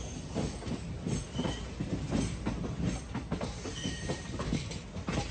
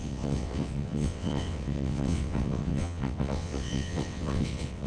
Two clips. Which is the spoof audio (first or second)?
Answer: second